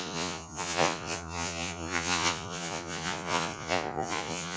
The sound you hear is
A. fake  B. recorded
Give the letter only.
A